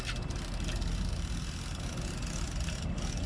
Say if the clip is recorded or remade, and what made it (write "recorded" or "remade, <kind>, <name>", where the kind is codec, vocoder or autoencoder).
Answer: recorded